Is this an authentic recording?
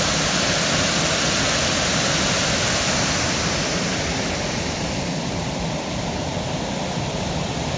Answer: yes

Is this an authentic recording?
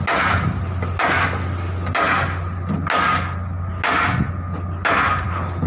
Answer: yes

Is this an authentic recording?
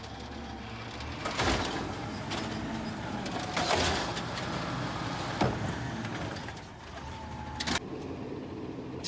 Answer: yes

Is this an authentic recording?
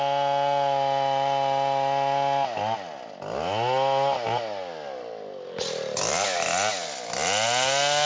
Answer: yes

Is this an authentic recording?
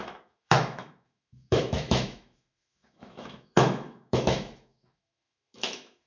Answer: no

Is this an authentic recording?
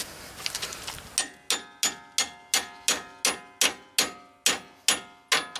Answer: yes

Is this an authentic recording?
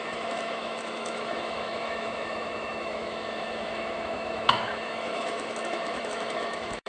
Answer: no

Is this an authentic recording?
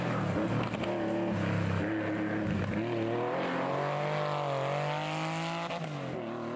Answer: yes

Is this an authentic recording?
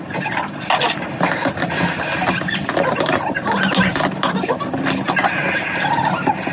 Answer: yes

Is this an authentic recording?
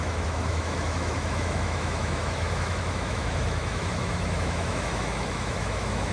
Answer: no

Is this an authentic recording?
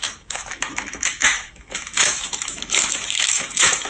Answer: no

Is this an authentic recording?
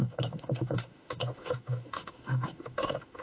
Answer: no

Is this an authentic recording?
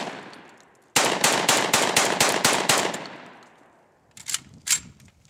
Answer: yes